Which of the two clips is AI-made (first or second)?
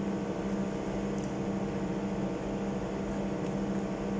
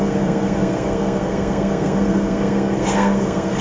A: second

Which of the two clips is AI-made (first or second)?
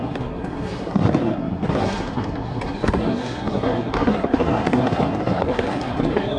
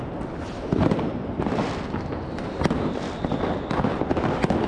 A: first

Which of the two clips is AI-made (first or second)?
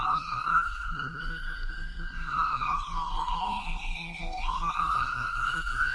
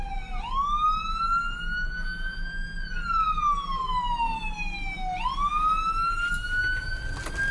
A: first